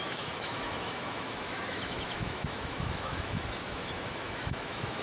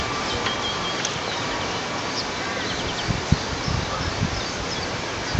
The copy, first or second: first